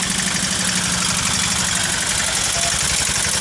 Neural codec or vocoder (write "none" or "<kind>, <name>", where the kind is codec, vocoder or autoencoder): none